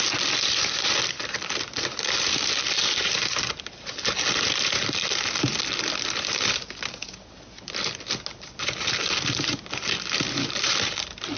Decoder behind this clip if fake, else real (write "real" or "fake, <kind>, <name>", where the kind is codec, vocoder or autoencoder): real